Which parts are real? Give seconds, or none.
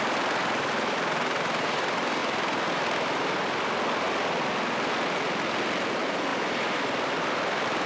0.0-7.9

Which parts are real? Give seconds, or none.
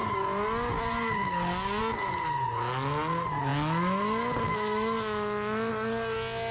0.0-6.5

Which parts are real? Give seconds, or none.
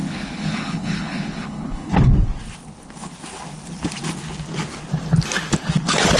1.9-6.2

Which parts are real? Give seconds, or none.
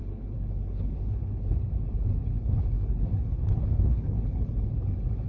1.7-2.2; 4.7-5.3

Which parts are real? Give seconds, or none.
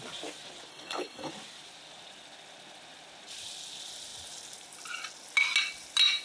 0.0-0.7; 1.3-6.2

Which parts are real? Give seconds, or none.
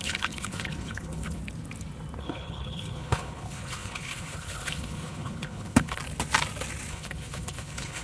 1.4-2.2; 6.0-6.9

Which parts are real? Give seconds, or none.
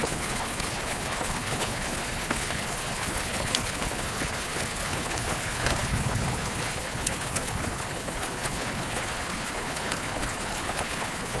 none